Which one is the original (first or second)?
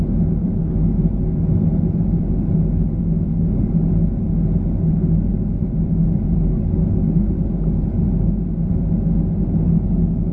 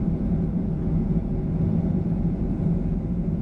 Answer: first